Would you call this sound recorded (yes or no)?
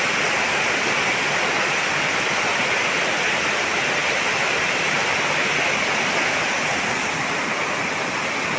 yes